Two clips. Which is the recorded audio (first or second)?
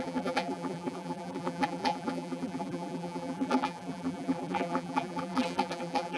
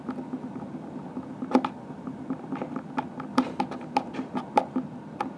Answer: second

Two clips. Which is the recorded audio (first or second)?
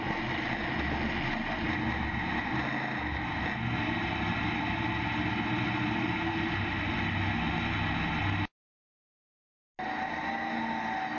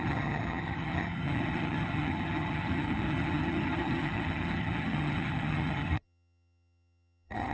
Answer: first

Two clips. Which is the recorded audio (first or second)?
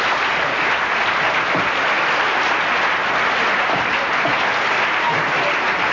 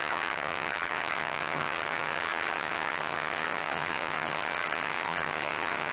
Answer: first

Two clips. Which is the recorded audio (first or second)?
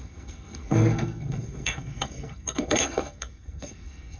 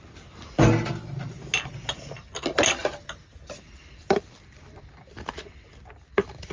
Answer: second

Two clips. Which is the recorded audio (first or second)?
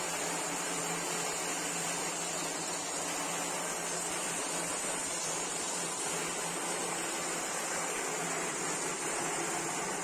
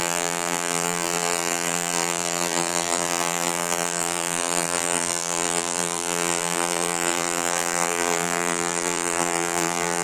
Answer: first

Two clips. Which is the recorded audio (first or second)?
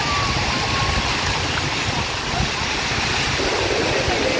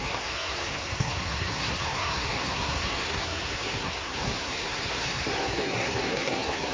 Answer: first